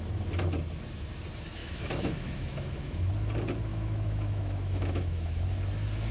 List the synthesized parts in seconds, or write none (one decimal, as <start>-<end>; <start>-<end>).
1.6-3.1; 3.7-5.4